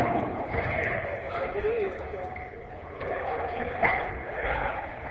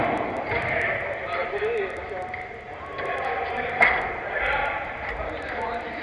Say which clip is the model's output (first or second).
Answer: first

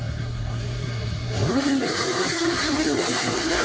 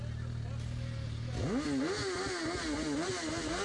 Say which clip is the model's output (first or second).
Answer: first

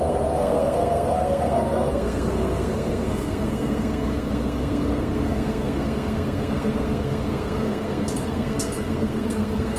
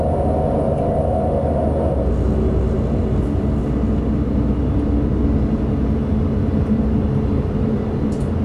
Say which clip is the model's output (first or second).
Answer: first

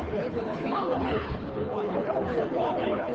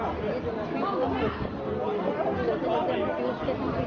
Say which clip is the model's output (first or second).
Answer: first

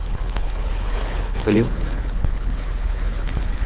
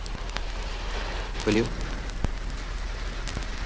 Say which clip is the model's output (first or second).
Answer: first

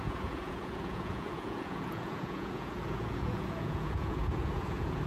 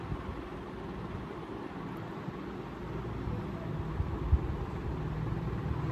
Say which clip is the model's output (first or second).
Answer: first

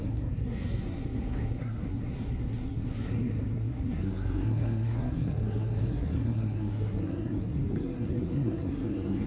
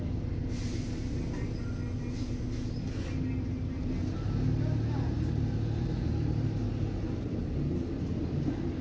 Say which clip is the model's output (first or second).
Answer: first